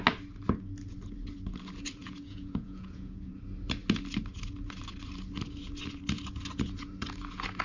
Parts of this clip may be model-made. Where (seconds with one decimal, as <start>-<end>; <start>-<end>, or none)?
2.0-3.3